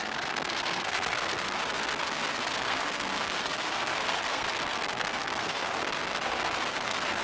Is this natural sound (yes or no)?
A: no